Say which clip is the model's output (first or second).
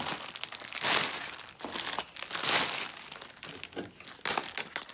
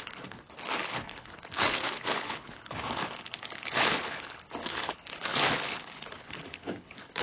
second